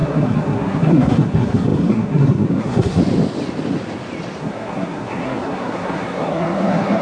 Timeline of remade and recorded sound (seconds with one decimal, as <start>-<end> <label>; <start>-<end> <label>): 0.0-3.0 remade; 3.0-4.4 recorded; 4.4-7.0 remade